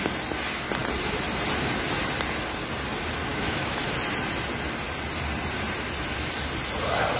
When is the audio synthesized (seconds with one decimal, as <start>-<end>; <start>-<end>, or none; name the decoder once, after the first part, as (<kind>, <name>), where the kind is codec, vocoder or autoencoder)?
3.3-3.8 (autoencoder, DAC-VAE)